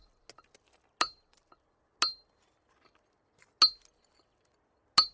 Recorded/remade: recorded